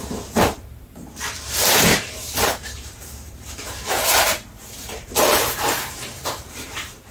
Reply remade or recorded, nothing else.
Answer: remade